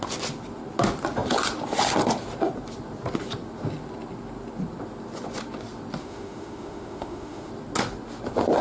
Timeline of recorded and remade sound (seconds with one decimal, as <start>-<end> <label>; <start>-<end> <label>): 0.0-6.0 recorded; 6.0-7.5 remade; 7.5-8.6 recorded